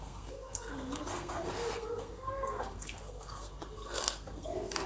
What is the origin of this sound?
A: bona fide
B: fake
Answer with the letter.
B